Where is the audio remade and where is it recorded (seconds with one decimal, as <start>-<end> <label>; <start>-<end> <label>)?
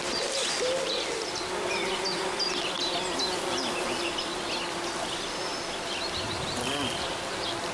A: 0.0-7.7 recorded